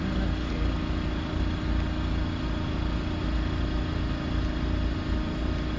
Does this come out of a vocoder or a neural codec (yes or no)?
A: no